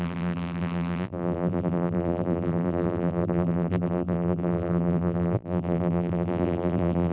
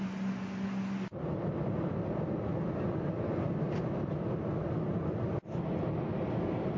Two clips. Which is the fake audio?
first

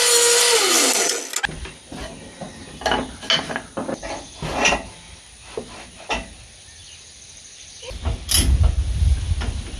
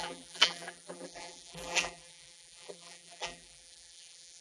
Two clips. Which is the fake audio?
second